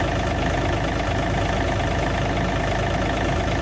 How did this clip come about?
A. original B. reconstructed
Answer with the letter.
A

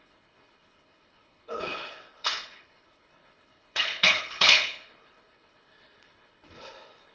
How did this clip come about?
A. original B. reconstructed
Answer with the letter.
B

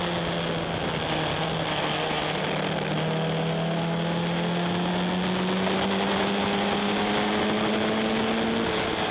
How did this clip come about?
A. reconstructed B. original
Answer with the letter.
B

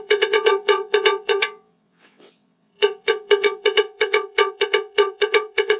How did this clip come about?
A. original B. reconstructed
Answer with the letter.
B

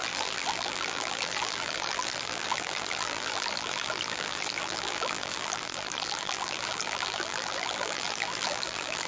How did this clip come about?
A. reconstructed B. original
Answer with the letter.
A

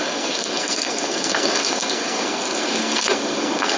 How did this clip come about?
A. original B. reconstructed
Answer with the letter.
B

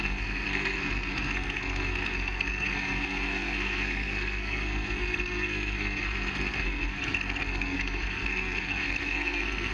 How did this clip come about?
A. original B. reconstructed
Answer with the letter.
B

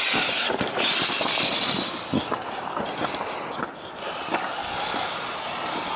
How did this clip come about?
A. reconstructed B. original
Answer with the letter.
B